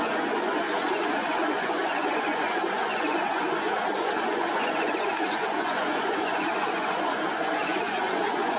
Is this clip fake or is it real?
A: fake